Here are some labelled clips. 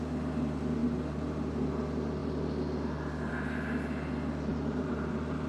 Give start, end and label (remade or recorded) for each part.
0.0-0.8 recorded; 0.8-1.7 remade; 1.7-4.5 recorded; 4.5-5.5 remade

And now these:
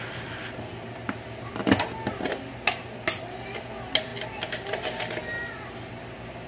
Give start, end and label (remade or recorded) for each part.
0.0-6.5 recorded

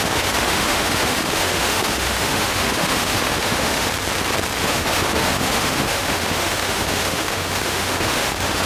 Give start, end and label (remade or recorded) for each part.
0.0-3.9 remade; 3.9-4.6 recorded; 4.6-8.7 remade

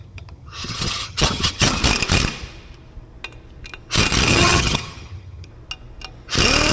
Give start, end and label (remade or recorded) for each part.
0.0-1.8 remade; 1.8-4.3 recorded; 4.3-5.5 remade; 5.5-6.7 recorded

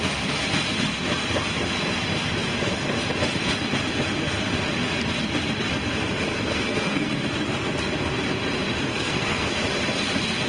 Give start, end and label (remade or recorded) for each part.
0.0-6.3 recorded; 6.3-7.1 remade; 7.1-8.9 recorded; 8.9-9.5 remade; 9.5-10.5 recorded

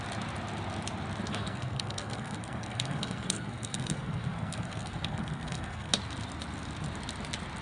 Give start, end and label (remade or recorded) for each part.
0.0-1.3 recorded; 1.3-5.9 remade; 5.9-7.6 recorded